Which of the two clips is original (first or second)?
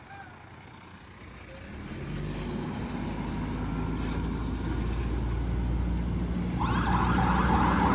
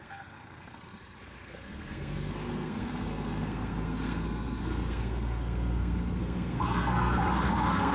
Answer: first